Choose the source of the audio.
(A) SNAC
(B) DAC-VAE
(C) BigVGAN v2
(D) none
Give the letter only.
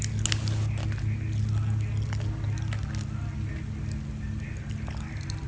D